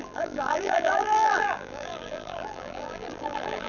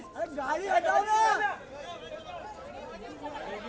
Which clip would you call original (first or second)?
second